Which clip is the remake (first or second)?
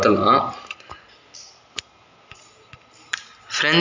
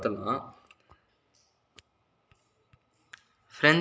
second